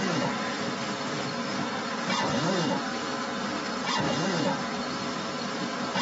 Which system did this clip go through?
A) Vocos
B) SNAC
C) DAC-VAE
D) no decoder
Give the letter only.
D